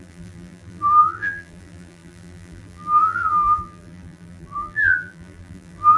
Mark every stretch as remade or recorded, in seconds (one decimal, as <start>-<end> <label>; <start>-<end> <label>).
0.0-6.0 remade